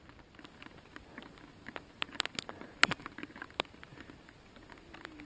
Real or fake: real